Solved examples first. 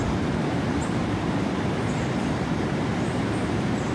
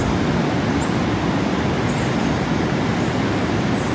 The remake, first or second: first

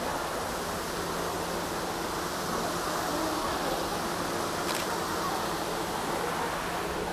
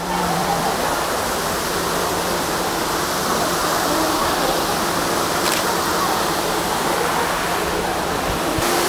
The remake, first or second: second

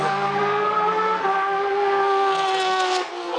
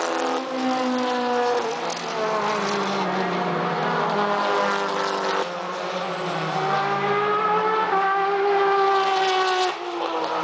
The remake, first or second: first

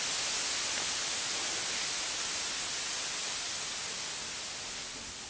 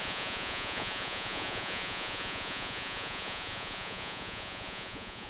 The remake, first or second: second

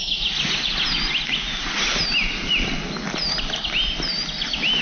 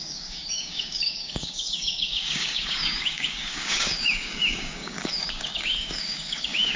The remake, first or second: second